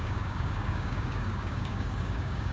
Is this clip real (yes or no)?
no